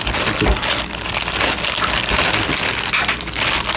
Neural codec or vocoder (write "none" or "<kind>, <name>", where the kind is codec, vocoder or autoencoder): none